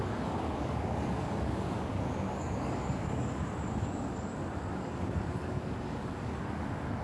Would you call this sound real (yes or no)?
no